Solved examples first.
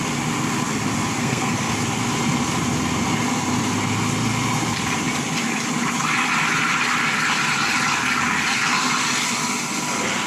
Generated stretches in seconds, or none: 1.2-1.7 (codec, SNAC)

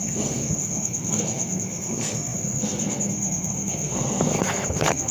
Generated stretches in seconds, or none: 0.0-5.1 (codec, SNAC)

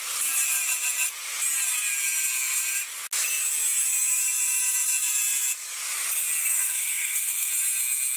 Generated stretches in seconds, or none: 6.4-7.5 (codec, SNAC)